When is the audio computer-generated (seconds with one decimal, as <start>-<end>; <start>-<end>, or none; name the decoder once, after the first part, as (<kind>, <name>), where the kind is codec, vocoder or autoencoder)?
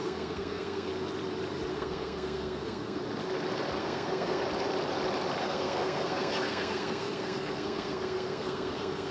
0.0-0.9 (codec, SNAC); 1.7-3.0; 3.8-4.4; 5.4-9.1